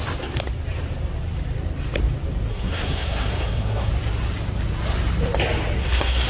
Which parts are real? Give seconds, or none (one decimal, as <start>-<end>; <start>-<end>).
0.0-2.5; 3.9-5.8